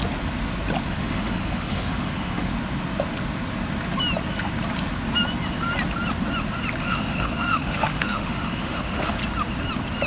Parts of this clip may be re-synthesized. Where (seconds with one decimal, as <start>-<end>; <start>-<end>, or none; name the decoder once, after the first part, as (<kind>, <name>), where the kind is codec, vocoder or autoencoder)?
0.9-2.5 (autoencoder, DAC-VAE); 6.8-9.2